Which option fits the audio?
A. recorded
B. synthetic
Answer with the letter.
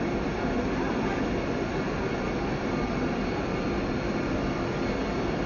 A